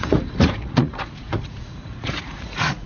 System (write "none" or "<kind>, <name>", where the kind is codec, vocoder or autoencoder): vocoder, Vocos